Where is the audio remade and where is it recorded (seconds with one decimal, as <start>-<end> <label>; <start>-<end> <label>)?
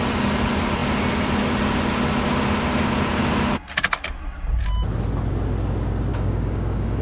0.0-6.1 recorded; 6.1-7.0 remade